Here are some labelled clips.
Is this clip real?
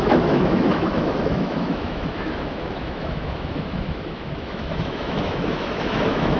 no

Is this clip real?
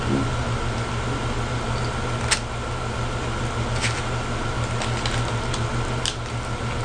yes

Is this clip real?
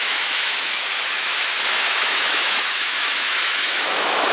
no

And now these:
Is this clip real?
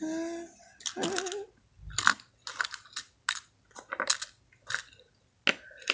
yes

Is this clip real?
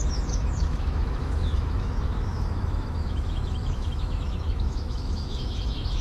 no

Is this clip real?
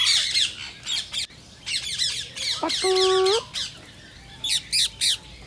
yes